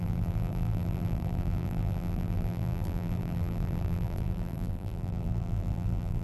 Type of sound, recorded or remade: remade